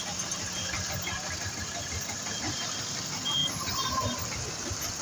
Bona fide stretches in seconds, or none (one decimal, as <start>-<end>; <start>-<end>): 0.0-5.0